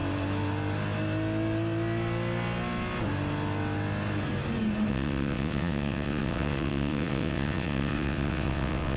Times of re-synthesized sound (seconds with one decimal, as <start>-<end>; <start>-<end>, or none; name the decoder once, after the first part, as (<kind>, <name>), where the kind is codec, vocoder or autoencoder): 4.9-9.0 (vocoder, WaveNeXt)